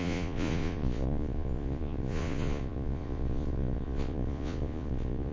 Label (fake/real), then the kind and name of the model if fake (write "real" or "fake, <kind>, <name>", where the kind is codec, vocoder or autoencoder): fake, vocoder, Vocos